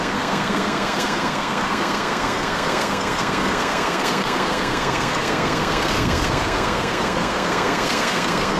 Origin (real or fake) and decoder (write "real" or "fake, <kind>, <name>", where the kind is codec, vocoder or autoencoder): fake, codec, SNAC